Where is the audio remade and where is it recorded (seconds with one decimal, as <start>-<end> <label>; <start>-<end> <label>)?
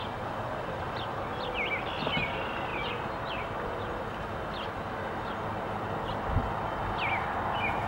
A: 0.0-7.9 recorded